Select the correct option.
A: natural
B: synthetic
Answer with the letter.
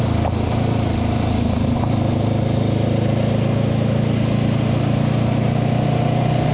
A